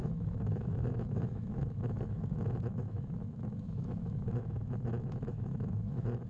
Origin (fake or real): fake